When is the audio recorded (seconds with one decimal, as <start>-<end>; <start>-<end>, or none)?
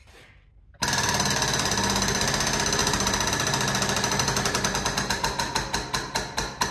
0.0-6.7